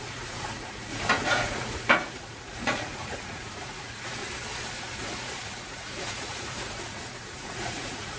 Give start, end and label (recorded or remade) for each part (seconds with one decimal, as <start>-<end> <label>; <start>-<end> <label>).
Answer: 0.0-4.2 remade; 4.2-4.7 recorded; 4.7-8.2 remade